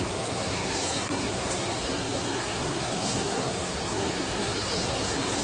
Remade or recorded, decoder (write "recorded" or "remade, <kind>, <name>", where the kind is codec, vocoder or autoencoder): remade, codec, SNAC